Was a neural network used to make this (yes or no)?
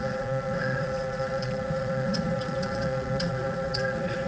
yes